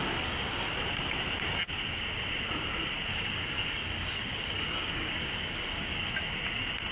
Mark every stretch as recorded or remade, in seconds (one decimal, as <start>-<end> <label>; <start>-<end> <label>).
0.0-0.7 remade; 0.7-3.1 recorded; 3.1-6.1 remade; 6.1-6.9 recorded